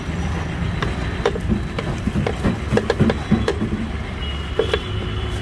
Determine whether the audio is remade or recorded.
recorded